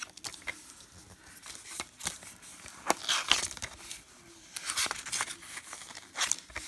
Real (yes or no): yes